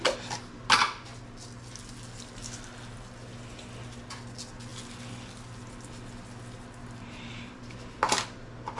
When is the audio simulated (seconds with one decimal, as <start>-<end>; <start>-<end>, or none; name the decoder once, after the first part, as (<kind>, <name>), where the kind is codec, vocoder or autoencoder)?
6.8-7.6 (vocoder, BigVGAN v2)